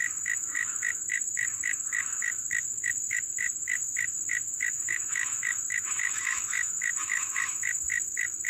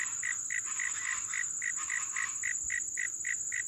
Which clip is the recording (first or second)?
second